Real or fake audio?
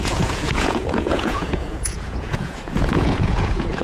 fake